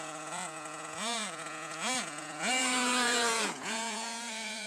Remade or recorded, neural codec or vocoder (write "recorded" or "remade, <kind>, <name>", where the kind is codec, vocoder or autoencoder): remade, vocoder, Vocos